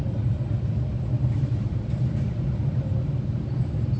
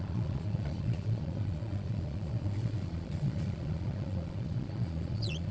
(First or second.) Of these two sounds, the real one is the first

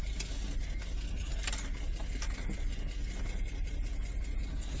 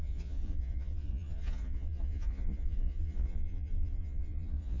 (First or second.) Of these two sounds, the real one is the first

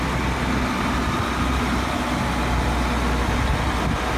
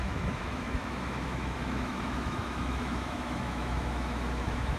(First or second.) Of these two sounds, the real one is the first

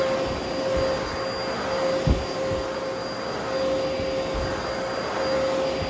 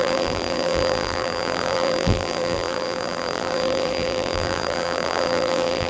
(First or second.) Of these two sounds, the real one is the first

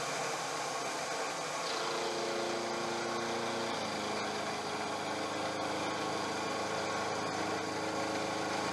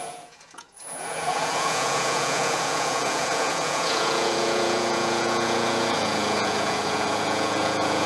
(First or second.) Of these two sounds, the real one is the first